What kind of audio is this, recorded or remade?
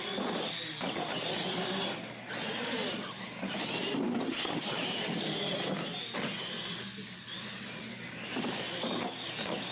recorded